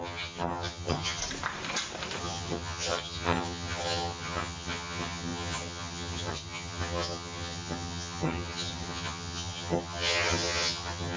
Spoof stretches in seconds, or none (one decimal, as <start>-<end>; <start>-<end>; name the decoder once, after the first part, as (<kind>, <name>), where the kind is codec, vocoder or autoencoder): 0.0-1.2 (vocoder, HiFi-GAN); 2.2-11.2